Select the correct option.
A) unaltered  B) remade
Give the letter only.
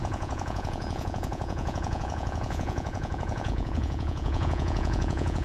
B